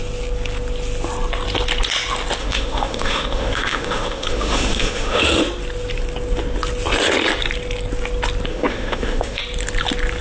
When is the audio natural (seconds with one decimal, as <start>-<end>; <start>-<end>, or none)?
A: 0.0-2.4; 5.4-8.5; 9.4-10.2